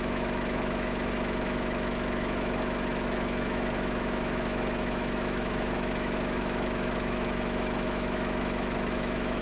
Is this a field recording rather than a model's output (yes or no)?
no